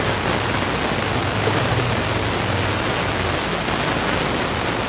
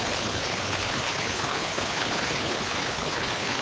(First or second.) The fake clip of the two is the second